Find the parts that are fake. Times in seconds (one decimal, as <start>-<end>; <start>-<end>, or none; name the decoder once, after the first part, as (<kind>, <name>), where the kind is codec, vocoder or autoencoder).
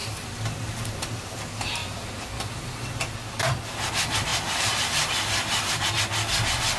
0.0-1.2 (vocoder, BigVGAN v2); 4.3-5.9